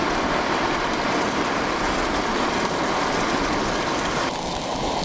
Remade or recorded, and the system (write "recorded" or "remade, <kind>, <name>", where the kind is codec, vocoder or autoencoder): recorded